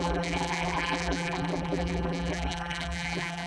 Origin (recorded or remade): remade